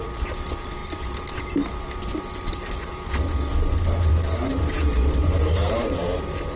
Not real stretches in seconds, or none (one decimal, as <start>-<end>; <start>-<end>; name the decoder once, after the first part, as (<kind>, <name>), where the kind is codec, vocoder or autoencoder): 0.0-6.6 (vocoder, BigVGAN v2)